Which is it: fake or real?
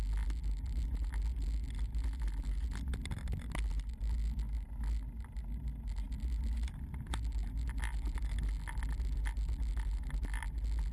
real